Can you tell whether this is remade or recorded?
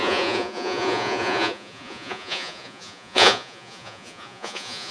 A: remade